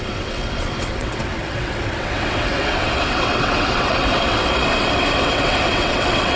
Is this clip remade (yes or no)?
yes